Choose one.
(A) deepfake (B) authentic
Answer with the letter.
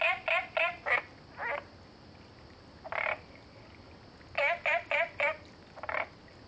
B